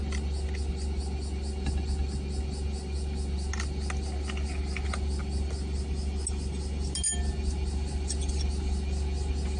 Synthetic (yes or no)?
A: no